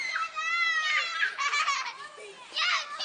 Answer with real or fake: fake